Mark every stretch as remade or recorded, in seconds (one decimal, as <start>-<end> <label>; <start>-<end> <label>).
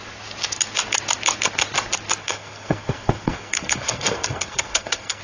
0.0-2.2 recorded; 2.2-5.2 remade